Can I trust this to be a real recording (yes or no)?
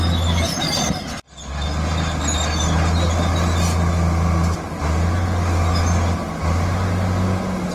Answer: yes